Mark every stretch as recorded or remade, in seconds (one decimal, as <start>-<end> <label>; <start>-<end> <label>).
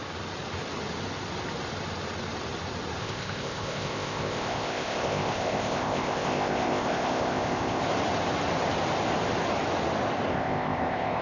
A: 0.0-3.0 recorded; 3.0-7.8 remade; 7.8-10.3 recorded; 10.3-11.2 remade